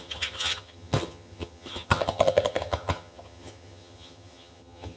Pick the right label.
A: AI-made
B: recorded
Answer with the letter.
A